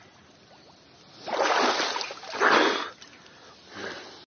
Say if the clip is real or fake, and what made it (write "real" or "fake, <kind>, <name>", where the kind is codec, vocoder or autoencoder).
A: real